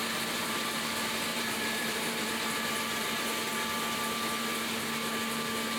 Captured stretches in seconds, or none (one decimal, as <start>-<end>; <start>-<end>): 0.0-1.3; 2.3-5.8